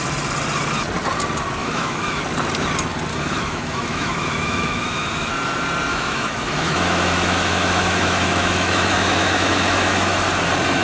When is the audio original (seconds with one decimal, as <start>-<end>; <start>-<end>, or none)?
0.0-1.6; 2.2-3.1; 5.3-5.9; 10.2-10.8